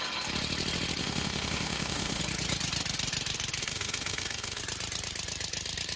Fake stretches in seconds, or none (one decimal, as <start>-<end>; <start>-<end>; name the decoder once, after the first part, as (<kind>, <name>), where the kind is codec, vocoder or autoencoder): 1.0-2.2 (autoencoder, DAC-VAE); 3.6-4.6

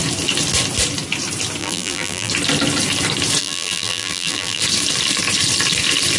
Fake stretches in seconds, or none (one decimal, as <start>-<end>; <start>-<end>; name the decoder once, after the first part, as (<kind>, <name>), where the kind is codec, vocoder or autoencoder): 1.6-2.3 (vocoder, BigVGAN v2); 3.4-4.6

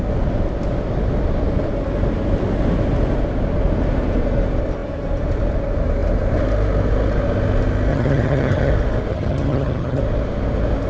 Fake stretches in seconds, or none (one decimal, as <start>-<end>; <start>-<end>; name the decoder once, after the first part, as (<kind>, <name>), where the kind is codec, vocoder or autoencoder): 7.9-8.7 (vocoder, HiFi-GAN); 9.1-10.0

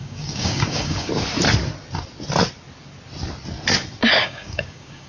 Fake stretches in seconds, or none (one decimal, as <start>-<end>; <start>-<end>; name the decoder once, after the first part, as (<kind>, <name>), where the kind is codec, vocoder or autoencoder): 0.0-1.1 (codec, DAC); 4.2-5.1

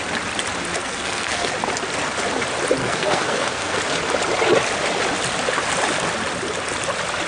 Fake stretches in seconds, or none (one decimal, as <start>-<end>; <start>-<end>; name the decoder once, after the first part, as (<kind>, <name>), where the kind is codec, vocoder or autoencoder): 0.8-1.5 (codec, SNAC); 2.8-3.8

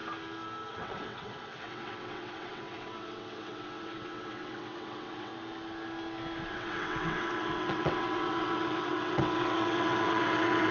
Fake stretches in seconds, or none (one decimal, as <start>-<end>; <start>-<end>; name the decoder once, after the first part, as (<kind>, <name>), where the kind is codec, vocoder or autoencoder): 0.7-5.3 (vocoder, WaveNeXt); 6.5-10.7

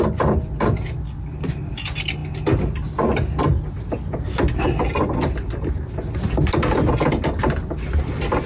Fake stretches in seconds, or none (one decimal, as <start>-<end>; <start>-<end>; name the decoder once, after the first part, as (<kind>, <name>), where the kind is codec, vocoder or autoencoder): none